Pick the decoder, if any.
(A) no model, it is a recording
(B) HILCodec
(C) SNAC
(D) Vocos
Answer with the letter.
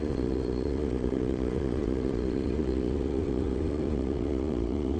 D